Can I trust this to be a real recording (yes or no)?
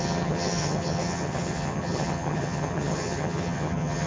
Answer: no